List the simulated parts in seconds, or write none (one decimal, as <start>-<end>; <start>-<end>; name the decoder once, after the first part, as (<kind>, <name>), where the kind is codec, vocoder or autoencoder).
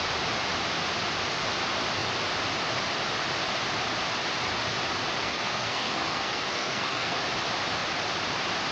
5.2-7.2 (codec, SNAC)